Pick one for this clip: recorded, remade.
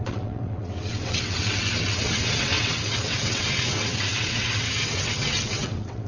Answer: remade